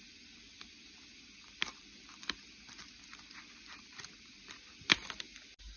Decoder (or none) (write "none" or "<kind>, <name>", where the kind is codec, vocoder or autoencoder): none